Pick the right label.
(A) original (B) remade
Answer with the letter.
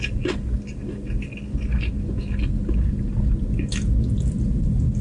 A